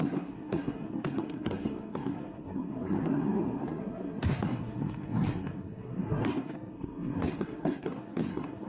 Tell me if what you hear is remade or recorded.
remade